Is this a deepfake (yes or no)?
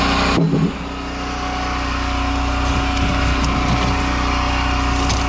no